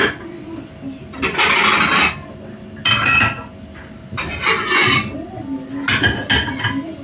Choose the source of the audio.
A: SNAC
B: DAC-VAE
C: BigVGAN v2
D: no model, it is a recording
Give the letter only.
D